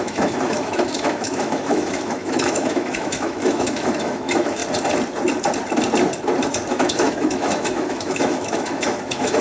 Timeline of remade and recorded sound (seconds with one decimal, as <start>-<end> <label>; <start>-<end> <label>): 0.0-4.6 remade; 4.6-6.7 recorded; 6.7-9.4 remade